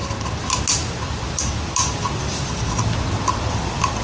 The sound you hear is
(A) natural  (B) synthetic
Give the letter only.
A